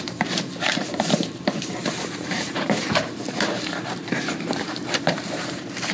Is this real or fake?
fake